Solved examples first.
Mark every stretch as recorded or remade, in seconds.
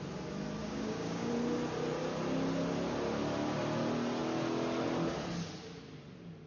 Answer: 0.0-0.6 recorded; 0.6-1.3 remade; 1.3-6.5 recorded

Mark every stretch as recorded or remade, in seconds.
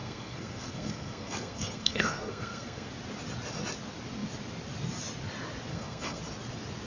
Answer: 0.0-2.9 remade; 2.9-5.7 recorded; 5.7-6.2 remade; 6.2-6.9 recorded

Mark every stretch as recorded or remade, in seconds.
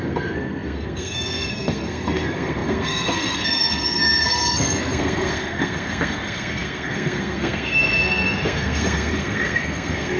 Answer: 0.0-10.2 remade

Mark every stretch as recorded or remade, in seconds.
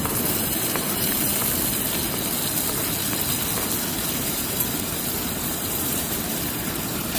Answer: 0.0-1.3 remade; 1.3-4.1 recorded; 4.1-7.2 remade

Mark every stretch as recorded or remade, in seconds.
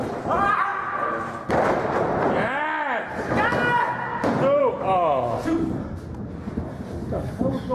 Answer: 0.0-0.7 recorded; 0.7-1.7 remade; 1.7-7.7 recorded